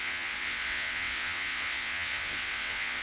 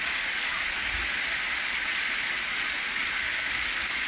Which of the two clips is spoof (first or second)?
first